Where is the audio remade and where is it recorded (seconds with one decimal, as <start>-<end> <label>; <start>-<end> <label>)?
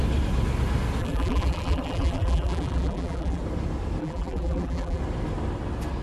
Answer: 0.0-1.0 recorded; 1.0-3.4 remade; 3.4-4.0 recorded; 4.0-5.0 remade; 5.0-6.0 recorded